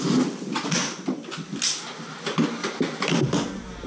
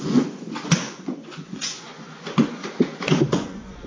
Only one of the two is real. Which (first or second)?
first